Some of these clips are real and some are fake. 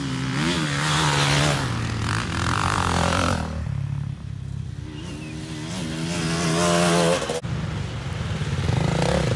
real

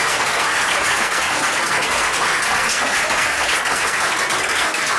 fake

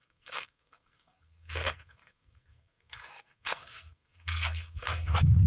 fake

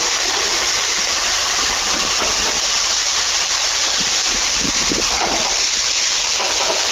real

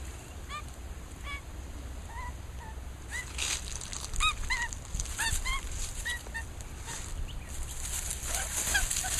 real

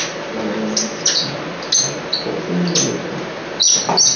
real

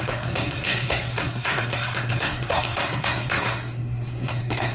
fake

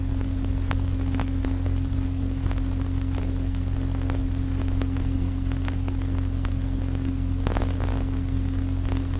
fake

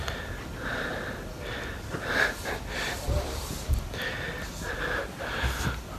real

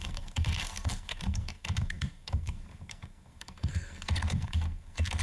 fake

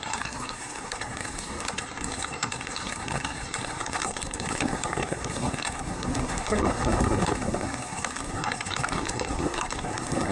fake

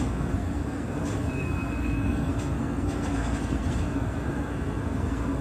fake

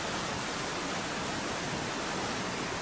real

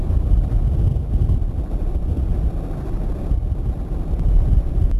real